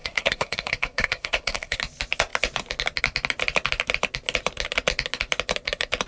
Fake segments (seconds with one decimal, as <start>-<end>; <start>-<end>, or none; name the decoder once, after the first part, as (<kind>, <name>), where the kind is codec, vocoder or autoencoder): 0.0-1.8 (codec, SNAC)